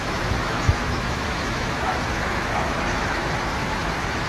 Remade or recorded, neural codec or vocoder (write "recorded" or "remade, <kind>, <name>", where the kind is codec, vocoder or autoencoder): remade, autoencoder, DAC-VAE